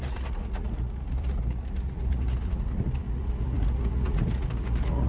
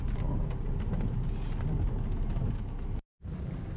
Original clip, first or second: second